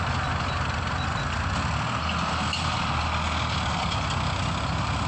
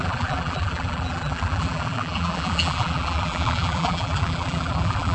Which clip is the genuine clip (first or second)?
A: first